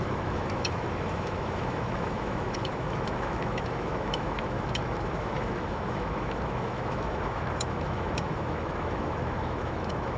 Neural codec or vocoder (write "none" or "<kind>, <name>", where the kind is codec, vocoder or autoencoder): autoencoder, DAC-VAE